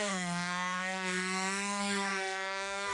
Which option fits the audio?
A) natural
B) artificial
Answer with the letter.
B